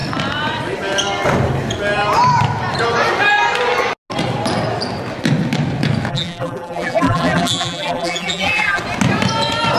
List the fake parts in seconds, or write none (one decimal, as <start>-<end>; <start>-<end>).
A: 6.1-8.8